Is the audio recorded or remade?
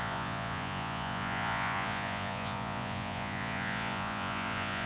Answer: remade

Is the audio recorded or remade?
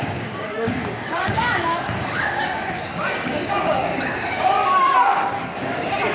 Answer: remade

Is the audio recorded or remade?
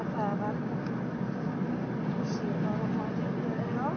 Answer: recorded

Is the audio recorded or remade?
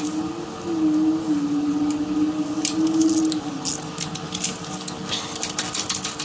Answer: recorded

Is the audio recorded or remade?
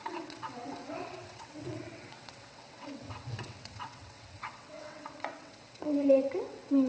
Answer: remade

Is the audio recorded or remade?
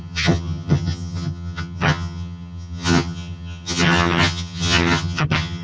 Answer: remade